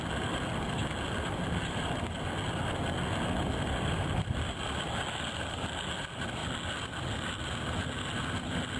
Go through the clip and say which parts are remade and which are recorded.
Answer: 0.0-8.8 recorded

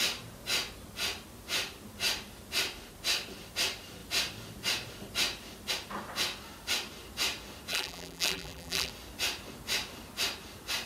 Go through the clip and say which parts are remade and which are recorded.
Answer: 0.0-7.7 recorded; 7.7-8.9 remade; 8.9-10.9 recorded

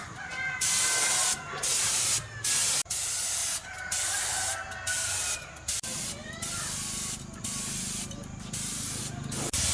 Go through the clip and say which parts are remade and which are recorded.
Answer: 0.0-6.2 recorded; 6.2-9.0 remade; 9.0-9.7 recorded